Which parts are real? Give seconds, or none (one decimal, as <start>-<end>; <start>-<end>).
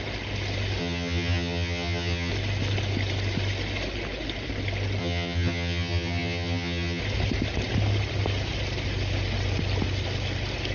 0.0-0.8; 2.3-5.0; 7.0-10.7